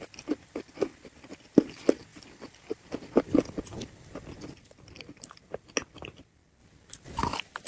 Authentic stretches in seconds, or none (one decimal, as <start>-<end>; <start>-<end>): 0.0-2.1; 3.5-7.7